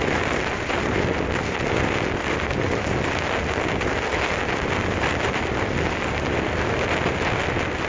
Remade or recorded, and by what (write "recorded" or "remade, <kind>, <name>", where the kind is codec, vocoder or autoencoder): recorded